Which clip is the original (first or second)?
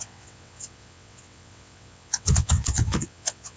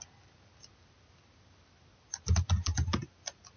second